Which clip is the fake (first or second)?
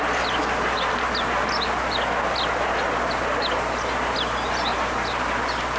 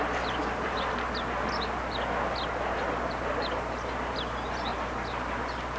second